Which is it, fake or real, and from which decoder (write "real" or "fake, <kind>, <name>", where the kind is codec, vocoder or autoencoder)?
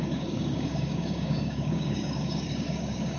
fake, codec, DAC